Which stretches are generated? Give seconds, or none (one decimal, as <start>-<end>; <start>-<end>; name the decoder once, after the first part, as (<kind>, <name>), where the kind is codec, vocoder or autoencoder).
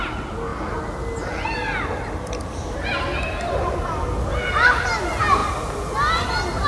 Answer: none